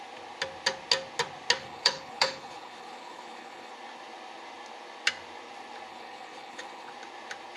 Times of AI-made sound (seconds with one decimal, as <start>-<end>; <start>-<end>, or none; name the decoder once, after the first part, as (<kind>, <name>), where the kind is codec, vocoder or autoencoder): 1.6-3.7 (codec, HILCodec); 5.9-6.9